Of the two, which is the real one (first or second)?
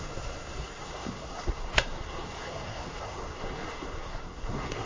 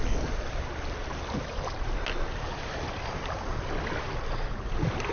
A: second